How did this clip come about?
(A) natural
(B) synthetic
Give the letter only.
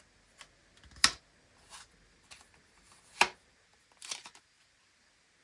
A